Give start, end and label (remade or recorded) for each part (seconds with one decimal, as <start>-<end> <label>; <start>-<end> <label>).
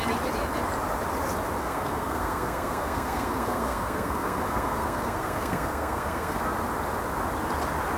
0.0-1.6 recorded; 1.6-6.4 remade; 6.4-8.0 recorded